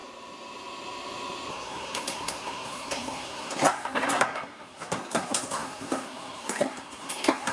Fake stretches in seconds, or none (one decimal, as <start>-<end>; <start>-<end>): 1.5-7.5